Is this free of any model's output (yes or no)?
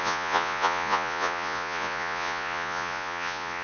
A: no